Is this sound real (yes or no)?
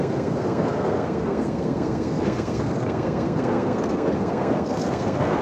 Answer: no